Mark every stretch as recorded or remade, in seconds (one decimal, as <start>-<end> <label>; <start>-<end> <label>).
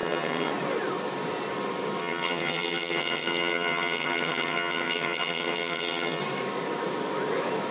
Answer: 0.0-0.5 remade; 0.5-2.0 recorded; 2.0-6.2 remade; 6.2-7.7 recorded